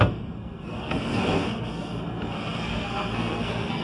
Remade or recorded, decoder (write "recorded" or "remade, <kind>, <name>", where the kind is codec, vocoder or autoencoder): remade, codec, SNAC